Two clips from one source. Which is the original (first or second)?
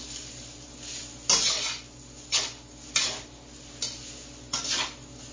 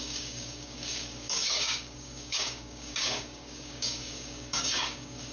first